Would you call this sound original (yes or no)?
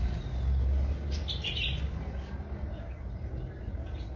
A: yes